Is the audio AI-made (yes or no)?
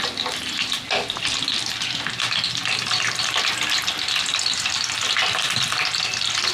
yes